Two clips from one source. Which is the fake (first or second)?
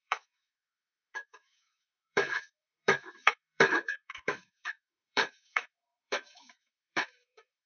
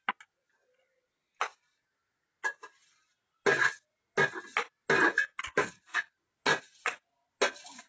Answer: first